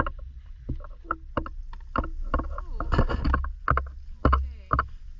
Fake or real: real